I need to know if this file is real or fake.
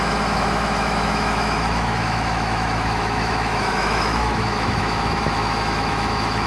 fake